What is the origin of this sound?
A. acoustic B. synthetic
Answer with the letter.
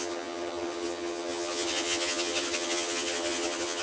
B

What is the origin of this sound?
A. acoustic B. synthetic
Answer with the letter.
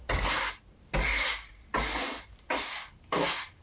A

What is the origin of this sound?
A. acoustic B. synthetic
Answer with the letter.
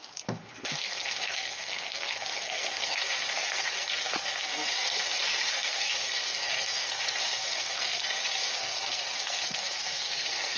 B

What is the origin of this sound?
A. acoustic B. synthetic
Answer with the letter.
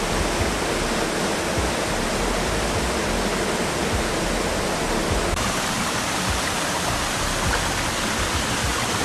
A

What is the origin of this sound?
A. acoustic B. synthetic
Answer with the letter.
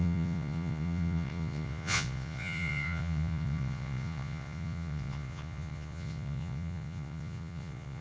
B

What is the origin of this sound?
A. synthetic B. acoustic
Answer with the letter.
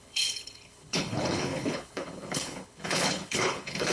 A